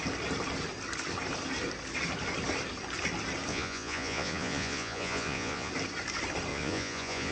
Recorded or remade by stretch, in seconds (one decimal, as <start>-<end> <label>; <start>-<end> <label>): 0.0-3.5 recorded; 3.5-5.7 remade; 5.7-6.5 recorded; 6.5-7.3 remade